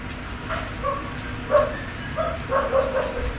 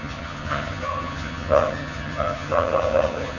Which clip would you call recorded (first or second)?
first